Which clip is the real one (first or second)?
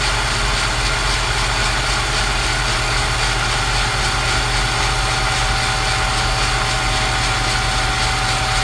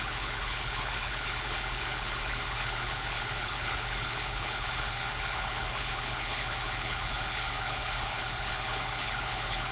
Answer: first